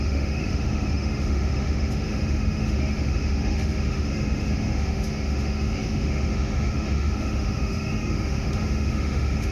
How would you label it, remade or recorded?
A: remade